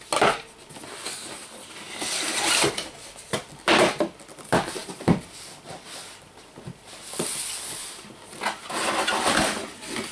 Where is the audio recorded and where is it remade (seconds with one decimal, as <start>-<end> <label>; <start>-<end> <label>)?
0.0-10.1 recorded